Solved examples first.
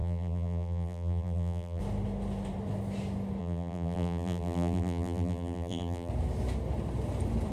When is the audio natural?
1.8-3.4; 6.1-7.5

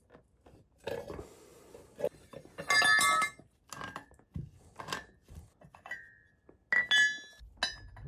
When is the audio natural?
0.0-8.1

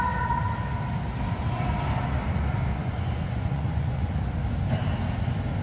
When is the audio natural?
0.0-2.7; 4.1-5.6

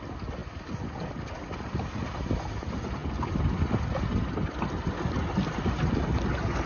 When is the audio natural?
0.0-6.7

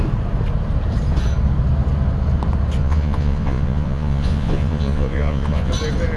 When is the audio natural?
0.0-2.8; 5.7-6.2

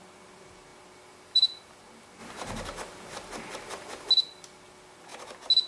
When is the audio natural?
0.0-0.7; 1.6-2.2; 4.1-5.7

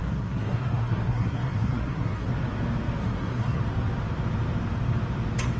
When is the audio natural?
2.3-3.0; 3.6-5.6